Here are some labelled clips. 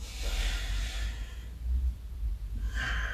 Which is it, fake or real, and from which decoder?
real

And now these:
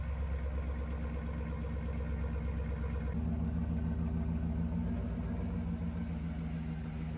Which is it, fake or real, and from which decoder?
real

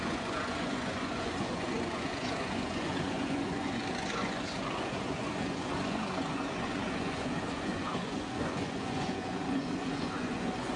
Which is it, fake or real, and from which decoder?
fake, vocoder, Vocos